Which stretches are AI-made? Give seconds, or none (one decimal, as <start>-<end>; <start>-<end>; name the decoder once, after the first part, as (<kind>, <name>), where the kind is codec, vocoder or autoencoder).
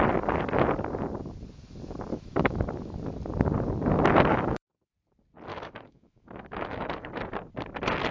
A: 2.1-2.6 (autoencoder, DAC-VAE); 4.3-4.9; 5.5-7.2